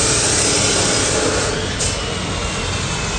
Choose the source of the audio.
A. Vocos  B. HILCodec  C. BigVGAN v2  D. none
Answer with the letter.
D